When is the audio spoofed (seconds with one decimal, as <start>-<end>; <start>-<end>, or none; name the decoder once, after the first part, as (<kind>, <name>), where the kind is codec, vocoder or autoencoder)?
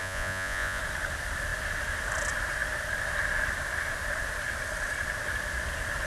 0.0-0.8 (vocoder, Vocos)